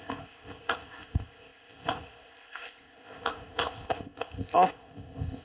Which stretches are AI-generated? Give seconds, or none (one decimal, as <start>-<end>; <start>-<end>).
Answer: 0.0-5.4